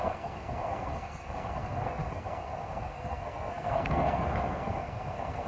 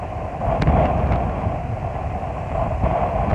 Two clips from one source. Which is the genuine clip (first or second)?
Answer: second